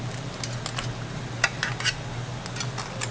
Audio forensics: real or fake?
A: real